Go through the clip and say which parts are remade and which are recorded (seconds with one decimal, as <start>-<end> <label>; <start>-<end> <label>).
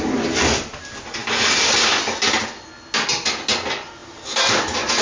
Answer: 0.0-5.0 recorded